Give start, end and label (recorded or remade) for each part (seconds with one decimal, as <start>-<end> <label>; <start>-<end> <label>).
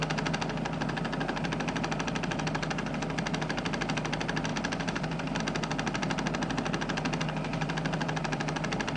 0.0-4.5 recorded; 4.5-5.4 remade; 5.4-7.5 recorded; 7.5-9.0 remade